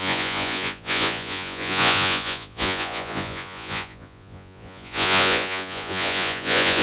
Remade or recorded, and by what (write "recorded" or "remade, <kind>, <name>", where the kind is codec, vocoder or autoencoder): remade, vocoder, Vocos